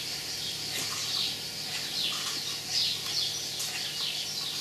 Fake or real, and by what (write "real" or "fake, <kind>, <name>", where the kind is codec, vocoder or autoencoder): real